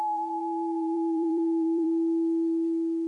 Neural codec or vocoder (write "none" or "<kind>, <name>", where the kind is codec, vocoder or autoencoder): vocoder, BigVGAN v2